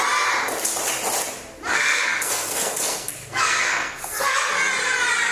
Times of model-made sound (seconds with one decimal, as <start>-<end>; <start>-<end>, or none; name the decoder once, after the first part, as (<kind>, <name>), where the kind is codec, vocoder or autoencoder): 1.7-4.5 (codec, SNAC)

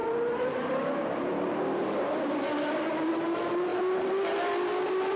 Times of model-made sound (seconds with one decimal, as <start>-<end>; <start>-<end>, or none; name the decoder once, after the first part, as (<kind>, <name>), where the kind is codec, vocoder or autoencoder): 0.0-3.1 (vocoder, BigVGAN v2)

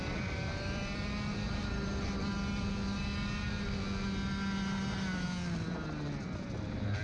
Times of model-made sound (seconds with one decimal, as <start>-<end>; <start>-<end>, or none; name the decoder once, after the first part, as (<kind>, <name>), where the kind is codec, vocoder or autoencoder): 0.0-1.9 (vocoder, BigVGAN v2); 6.1-7.0

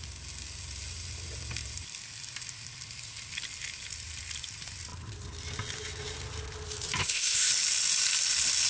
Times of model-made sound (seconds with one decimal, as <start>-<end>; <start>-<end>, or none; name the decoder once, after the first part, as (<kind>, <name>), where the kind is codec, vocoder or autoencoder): 7.0-7.5 (codec, ZipCodec)

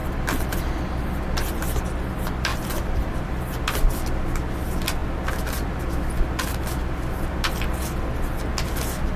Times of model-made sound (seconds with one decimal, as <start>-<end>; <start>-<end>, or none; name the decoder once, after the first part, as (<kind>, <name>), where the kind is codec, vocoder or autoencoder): 0.0-0.8 (vocoder, BigVGAN v2); 2.5-3.6

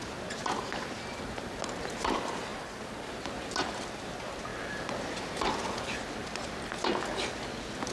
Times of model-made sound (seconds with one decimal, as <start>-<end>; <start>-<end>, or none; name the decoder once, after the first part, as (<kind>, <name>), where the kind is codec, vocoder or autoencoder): none